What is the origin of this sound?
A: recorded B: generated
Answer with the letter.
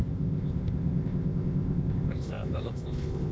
B